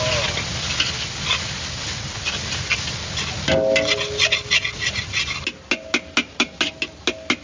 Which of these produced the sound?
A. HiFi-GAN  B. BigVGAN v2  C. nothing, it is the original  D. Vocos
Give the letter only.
C